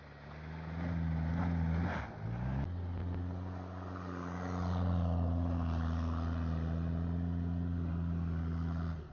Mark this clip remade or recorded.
recorded